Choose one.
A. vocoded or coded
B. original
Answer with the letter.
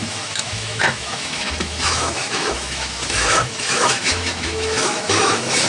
A